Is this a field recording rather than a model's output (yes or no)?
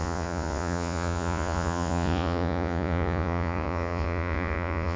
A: no